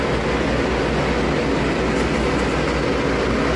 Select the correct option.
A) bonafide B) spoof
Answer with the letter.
A